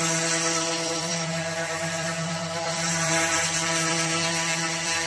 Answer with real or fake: fake